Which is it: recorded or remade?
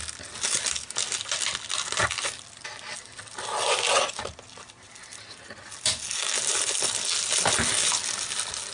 recorded